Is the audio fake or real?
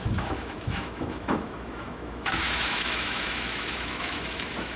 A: fake